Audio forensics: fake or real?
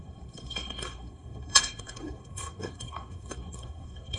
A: fake